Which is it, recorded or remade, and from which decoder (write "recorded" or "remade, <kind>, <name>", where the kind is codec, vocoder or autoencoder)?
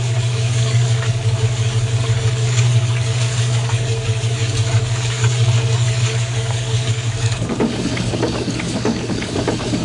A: remade, codec, DAC